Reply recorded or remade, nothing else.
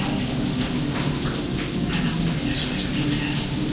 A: recorded